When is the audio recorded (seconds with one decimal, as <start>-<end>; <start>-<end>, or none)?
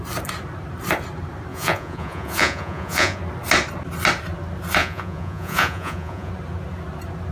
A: 0.0-1.5; 3.2-4.8; 6.3-7.3